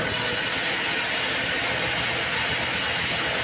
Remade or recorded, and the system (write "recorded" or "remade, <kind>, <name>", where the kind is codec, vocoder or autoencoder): recorded